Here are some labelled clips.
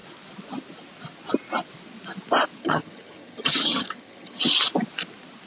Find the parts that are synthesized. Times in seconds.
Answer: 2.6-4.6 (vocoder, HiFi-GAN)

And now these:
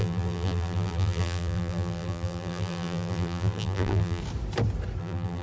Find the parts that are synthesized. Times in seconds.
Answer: 0.0-4.2 (vocoder, BigVGAN v2); 5.0-5.4

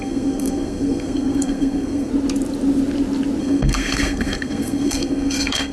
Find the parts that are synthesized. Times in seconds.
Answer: 0.0-2.1 (codec, SNAC); 3.4-5.7

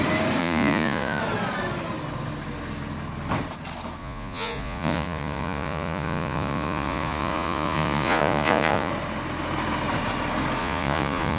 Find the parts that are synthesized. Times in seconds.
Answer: 0.4-1.2 (vocoder, Vocos); 4.0-8.9; 10.6-11.4

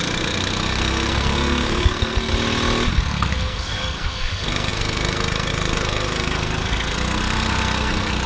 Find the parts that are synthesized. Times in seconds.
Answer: 0.0-2.3 (codec, SNAC); 2.9-8.3

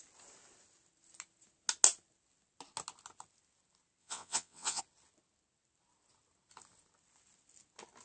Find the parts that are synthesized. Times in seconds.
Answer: 4.0-4.8 (vocoder, WaveNeXt)

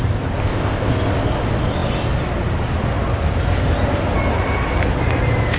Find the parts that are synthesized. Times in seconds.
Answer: 0.4-0.9 (codec, ZipCodec)

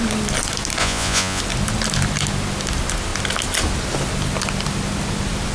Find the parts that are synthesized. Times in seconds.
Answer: 0.8-1.4 (vocoder, Vocos)